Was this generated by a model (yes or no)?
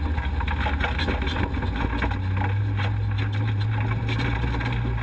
no